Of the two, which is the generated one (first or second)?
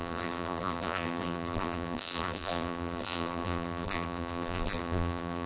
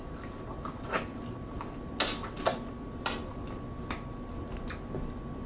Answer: first